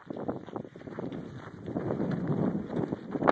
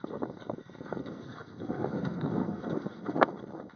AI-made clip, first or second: second